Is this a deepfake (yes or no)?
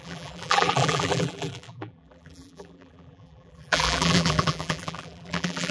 yes